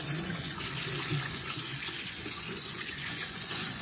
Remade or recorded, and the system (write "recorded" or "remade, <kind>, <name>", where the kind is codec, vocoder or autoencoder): remade, vocoder, Vocos